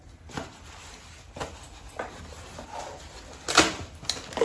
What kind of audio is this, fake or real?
real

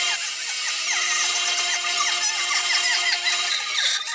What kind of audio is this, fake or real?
real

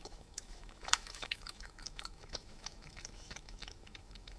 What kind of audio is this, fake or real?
fake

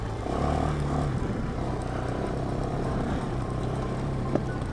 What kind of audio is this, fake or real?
fake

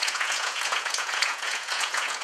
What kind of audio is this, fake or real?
fake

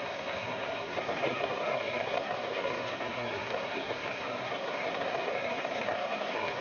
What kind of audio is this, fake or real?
fake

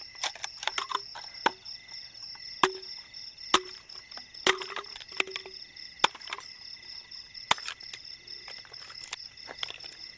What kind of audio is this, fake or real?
real